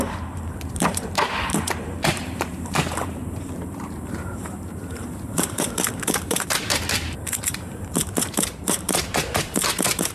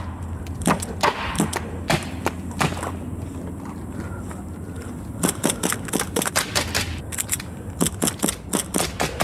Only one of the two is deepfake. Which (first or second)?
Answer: first